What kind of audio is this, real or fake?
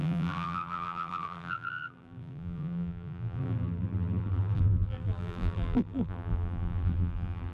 fake